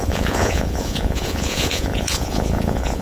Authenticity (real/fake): fake